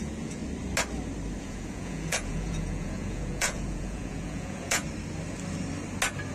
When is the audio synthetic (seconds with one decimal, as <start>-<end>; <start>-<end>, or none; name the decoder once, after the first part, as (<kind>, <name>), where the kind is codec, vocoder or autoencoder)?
0.0-0.4 (vocoder, Vocos); 1.4-4.8